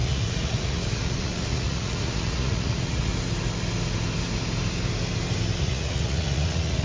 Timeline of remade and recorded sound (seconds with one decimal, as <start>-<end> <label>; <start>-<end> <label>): 0.0-3.1 remade; 3.1-5.6 recorded; 5.6-6.8 remade